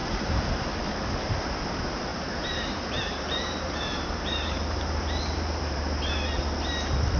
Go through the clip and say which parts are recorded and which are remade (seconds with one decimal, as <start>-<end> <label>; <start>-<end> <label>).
0.0-0.5 remade; 0.5-2.1 recorded; 2.1-5.8 remade; 5.8-7.2 recorded